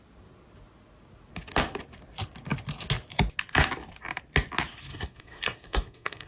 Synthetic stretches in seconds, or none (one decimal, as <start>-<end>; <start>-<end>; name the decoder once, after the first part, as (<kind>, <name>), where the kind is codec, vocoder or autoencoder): 4.9-6.3 (codec, SNAC)